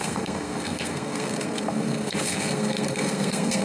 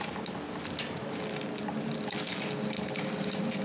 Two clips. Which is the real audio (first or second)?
second